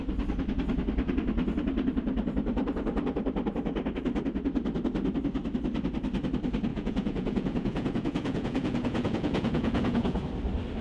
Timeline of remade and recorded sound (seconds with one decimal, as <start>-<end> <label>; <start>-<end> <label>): 0.0-6.7 recorded; 6.7-10.2 remade; 10.2-10.8 recorded